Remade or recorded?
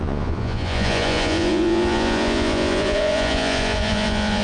remade